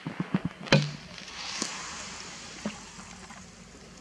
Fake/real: real